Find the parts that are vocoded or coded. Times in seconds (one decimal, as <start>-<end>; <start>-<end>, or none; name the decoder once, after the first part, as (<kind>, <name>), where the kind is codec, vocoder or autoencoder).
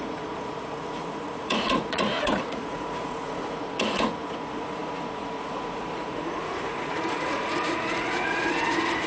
0.0-9.1 (vocoder, Vocos)